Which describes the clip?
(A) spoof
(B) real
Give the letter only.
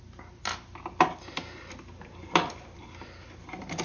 B